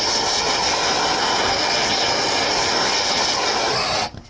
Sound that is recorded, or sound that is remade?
recorded